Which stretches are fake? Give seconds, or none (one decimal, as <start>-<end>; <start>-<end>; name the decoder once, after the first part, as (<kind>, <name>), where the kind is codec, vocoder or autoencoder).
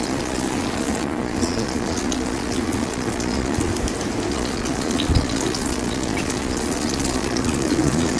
0.0-3.7 (vocoder, Vocos); 4.3-8.2